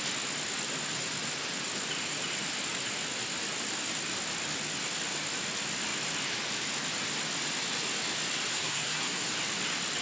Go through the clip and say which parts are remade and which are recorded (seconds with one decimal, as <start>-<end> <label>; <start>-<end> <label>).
0.0-8.5 recorded; 8.5-9.3 remade; 9.3-10.0 recorded